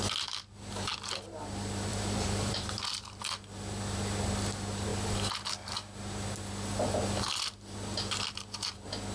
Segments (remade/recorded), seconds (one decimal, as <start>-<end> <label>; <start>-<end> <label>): 0.0-1.9 recorded; 1.9-3.2 remade; 3.2-9.1 recorded